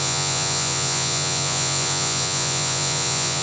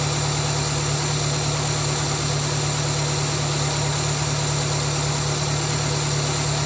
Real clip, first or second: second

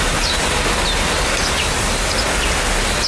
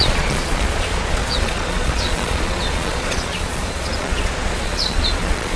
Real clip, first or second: first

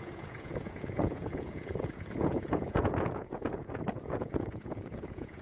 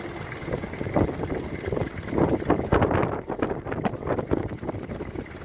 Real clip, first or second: second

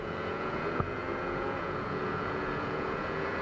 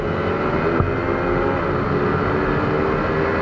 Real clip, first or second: second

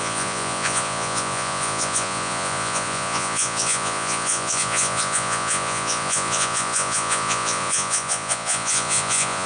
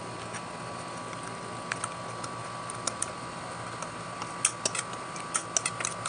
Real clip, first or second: second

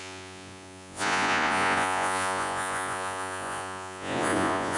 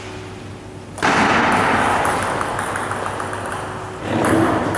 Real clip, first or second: second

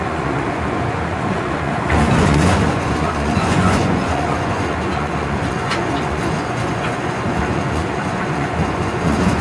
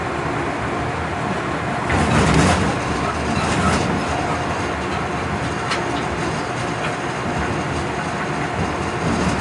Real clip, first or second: second